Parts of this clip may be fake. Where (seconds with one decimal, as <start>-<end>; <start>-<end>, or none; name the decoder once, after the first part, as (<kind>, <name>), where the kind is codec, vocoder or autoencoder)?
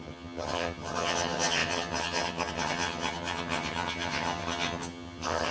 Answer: 0.0-5.5 (vocoder, HiFi-GAN)